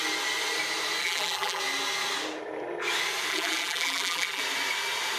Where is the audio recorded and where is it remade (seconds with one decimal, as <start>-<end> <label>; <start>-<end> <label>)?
0.0-1.0 recorded; 1.0-1.6 remade; 1.6-3.3 recorded; 3.3-4.4 remade; 4.4-5.2 recorded